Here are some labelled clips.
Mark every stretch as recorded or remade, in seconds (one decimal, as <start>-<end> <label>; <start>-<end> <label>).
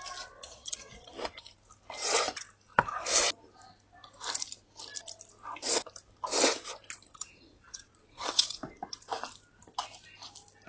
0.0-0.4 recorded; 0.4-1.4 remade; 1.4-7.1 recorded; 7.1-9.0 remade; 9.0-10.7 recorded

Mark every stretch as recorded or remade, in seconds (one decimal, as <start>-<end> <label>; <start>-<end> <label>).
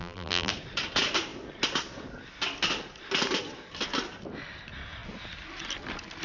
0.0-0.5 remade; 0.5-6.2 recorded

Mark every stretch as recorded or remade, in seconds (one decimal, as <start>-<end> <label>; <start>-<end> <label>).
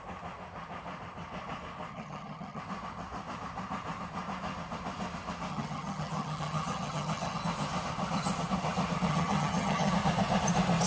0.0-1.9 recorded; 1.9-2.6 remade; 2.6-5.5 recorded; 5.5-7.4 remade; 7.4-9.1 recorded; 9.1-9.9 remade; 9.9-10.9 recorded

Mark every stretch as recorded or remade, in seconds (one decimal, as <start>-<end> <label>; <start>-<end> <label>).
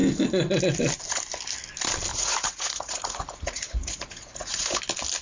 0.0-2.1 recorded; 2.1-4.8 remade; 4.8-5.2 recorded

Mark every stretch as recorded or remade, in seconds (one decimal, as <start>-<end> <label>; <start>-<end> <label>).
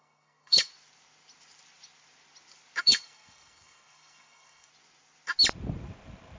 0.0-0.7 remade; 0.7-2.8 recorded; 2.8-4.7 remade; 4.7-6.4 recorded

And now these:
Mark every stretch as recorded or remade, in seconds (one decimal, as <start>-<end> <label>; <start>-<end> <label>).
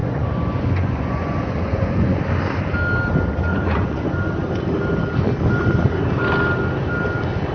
0.0-2.2 remade; 2.2-3.5 recorded; 3.5-4.1 remade; 4.1-7.5 recorded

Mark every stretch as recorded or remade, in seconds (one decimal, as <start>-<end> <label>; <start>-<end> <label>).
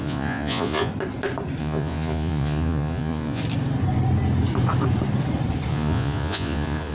0.0-0.9 remade; 0.9-1.6 recorded; 1.6-3.4 remade; 3.4-5.7 recorded; 5.7-6.9 remade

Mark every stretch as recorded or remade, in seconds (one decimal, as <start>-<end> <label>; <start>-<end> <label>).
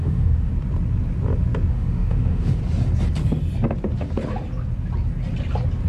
0.0-0.5 remade; 0.5-1.7 recorded; 1.7-2.6 remade; 2.6-5.9 recorded